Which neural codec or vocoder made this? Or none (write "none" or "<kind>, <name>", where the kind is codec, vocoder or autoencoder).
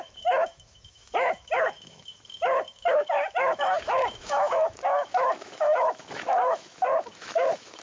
autoencoder, DAC-VAE